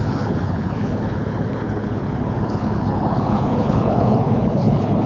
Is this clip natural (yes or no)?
no